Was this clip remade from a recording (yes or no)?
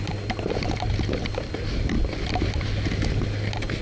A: no